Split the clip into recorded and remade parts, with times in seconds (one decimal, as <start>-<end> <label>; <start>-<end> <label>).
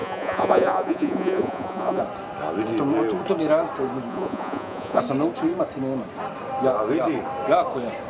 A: 0.0-2.0 remade; 2.0-4.1 recorded; 4.1-5.0 remade; 5.0-8.1 recorded